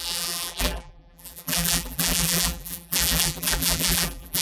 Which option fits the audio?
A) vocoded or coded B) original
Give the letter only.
A